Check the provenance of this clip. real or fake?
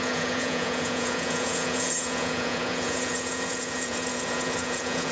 fake